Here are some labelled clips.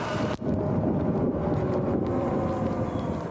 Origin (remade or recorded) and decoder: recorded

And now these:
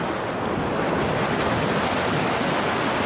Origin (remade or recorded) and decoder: recorded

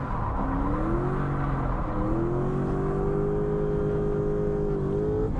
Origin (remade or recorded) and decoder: recorded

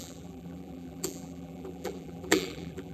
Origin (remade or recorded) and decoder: remade, vocoder, BigVGAN v2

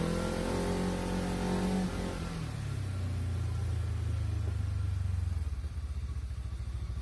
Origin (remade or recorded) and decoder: recorded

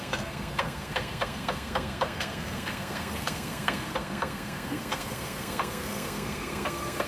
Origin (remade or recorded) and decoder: remade, codec, SNAC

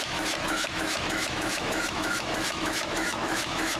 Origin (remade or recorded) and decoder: remade, autoencoder, DAC-VAE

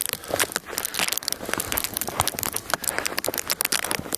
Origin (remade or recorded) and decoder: recorded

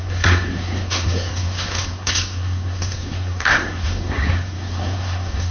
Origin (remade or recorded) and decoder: remade, codec, SNAC